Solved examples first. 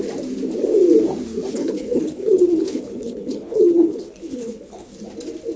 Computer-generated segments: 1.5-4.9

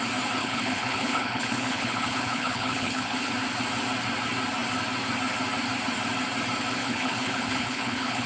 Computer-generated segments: 0.4-3.3; 6.8-8.3

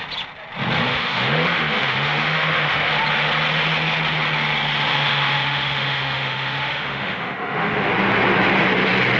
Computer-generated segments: 0.9-2.9; 4.9-7.9

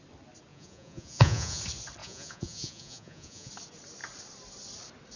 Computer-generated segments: 0.5-1.6; 2.0-3.5

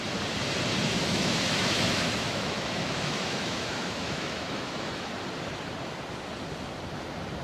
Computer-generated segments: 0.8-5.1

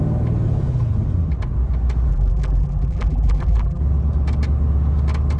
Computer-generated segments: 2.1-3.8

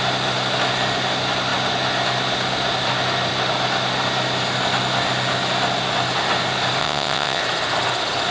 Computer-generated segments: 6.8-7.4